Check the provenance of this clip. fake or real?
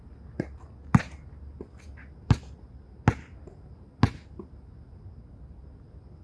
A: real